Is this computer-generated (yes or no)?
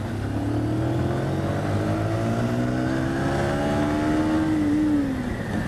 no